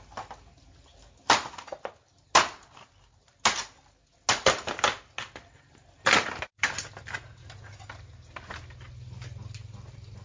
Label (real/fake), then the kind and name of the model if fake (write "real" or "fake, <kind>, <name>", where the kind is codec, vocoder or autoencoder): real